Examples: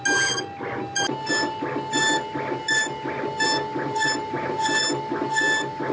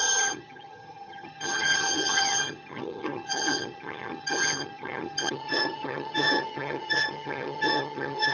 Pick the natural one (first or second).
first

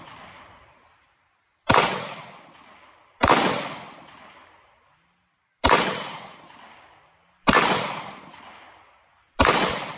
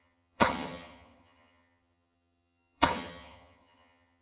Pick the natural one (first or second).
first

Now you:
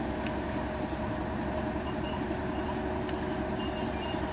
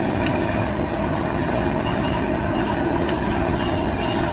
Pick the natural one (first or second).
first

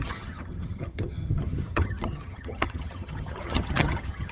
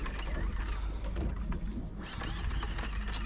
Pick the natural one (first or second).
second